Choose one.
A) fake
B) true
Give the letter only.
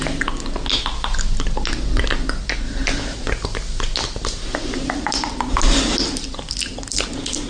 B